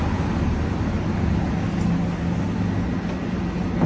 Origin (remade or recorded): recorded